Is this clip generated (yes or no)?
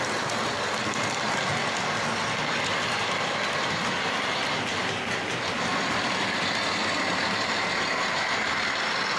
no